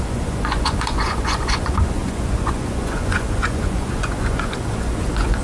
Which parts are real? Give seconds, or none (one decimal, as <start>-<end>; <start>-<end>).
none